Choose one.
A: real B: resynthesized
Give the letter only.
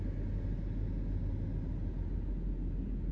A